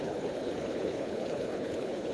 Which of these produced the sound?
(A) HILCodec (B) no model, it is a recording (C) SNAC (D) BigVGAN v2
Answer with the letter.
A